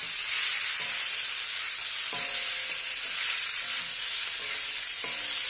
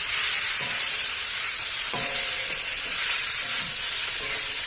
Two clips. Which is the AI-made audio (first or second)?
second